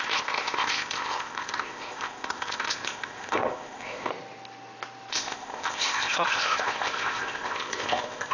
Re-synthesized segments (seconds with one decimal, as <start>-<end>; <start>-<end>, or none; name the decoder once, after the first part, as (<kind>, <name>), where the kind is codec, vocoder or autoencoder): 0.0-4.1 (codec, ZipCodec); 5.1-8.3